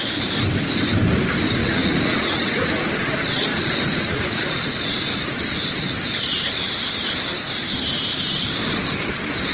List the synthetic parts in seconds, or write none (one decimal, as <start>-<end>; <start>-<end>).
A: 1.6-2.8; 3.5-4.4